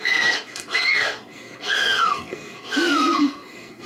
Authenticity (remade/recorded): remade